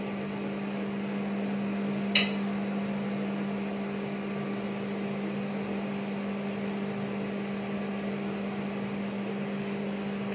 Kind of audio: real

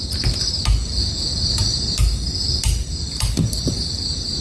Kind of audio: real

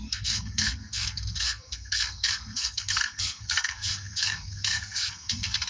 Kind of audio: fake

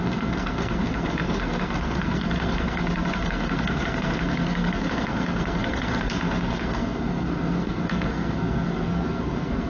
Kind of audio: fake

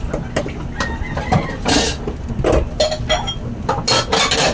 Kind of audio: real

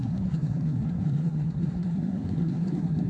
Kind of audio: fake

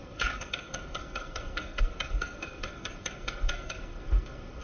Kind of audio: fake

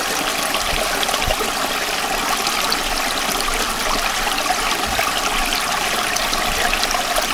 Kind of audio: real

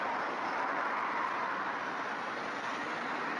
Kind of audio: real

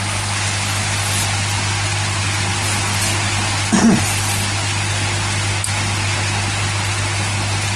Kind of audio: real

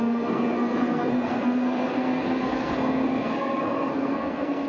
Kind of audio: fake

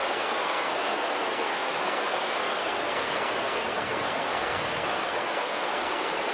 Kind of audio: fake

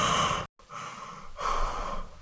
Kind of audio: real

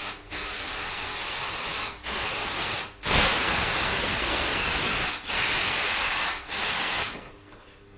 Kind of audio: fake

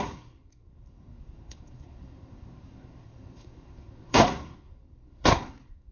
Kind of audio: fake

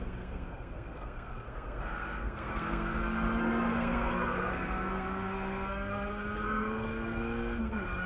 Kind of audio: fake